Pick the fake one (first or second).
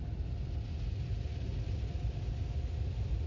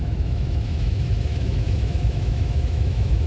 second